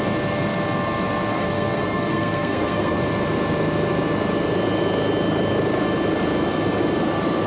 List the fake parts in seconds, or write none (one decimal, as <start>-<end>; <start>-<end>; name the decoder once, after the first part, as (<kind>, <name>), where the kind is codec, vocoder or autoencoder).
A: 1.3-3.0 (codec, SNAC)